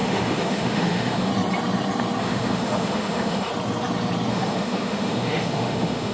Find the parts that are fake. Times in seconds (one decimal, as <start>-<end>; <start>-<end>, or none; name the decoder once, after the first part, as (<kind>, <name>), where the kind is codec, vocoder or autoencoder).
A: 0.0-1.3 (autoencoder, DAC-VAE); 2.2-3.5; 4.3-6.1